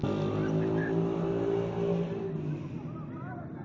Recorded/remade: recorded